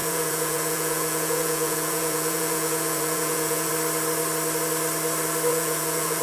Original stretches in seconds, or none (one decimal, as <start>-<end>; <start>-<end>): 3.7-5.5